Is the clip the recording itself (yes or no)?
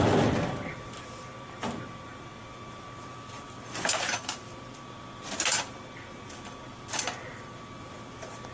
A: no